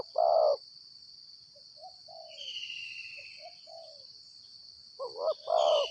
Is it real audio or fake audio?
real